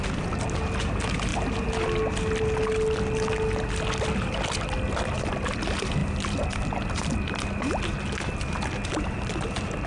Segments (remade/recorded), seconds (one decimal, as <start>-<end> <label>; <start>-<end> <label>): 0.0-9.9 recorded